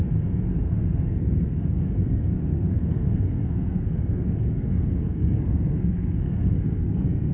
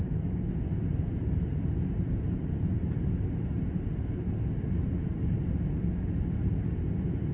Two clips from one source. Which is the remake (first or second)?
first